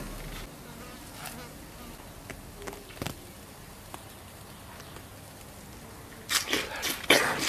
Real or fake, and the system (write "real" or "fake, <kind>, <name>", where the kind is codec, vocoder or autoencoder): real